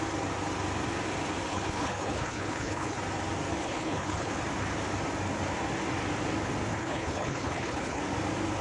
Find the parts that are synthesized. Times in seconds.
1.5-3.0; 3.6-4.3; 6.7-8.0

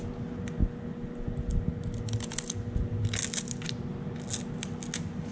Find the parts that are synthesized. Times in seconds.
none

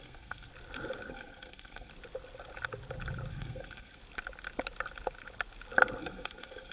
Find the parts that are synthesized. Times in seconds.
0.0-0.5; 1.1-1.9; 3.3-4.0; 6.0-6.7

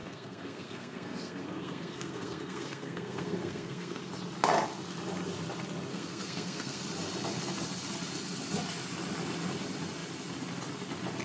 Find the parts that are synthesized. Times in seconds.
0.0-4.0; 5.9-6.8

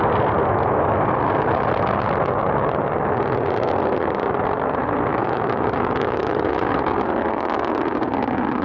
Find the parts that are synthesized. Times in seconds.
5.1-6.9

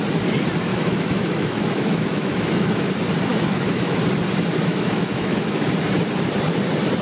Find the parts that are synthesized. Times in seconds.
0.7-2.9; 3.3-4.0; 4.7-5.7